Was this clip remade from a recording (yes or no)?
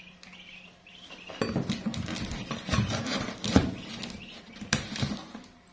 no